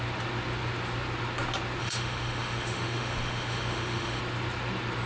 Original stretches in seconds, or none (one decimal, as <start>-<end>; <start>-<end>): 0.0-1.8; 4.2-5.1